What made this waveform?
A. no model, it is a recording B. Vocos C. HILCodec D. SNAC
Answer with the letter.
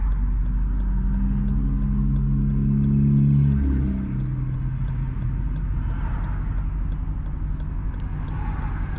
A